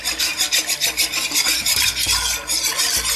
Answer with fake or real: real